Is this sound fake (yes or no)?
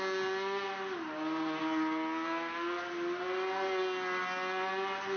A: no